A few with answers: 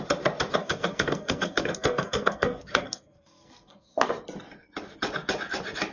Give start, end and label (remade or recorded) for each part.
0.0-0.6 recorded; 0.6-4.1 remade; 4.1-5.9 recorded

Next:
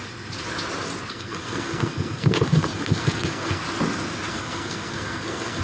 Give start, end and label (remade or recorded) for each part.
0.0-1.1 recorded; 1.1-3.6 remade; 3.6-4.3 recorded; 4.3-5.6 remade

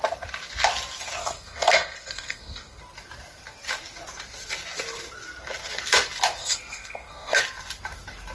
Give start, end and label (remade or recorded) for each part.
0.0-1.2 recorded; 1.2-2.8 remade; 2.8-6.4 recorded; 6.4-7.4 remade; 7.4-8.3 recorded

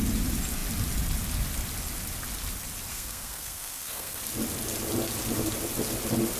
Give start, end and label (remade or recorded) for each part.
0.0-2.9 recorded; 2.9-4.2 remade; 4.2-6.4 recorded

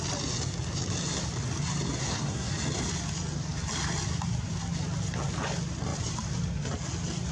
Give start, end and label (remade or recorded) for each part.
0.0-2.0 recorded; 2.0-2.5 remade; 2.5-7.3 recorded

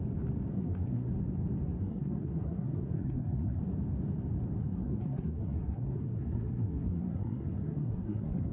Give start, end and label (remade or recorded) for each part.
0.0-0.5 recorded; 0.5-1.1 remade; 1.1-1.8 recorded; 1.8-3.6 remade; 3.6-4.6 recorded; 4.6-8.5 remade